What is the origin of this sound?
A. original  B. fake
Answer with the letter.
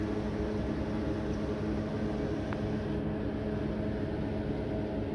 A